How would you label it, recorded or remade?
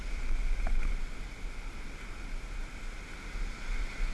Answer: recorded